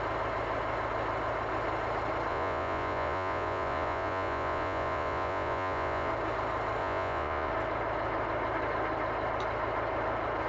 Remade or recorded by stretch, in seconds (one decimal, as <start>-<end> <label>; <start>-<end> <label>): 0.0-2.3 recorded; 2.3-6.1 remade; 6.1-6.8 recorded; 6.8-7.5 remade; 7.5-10.5 recorded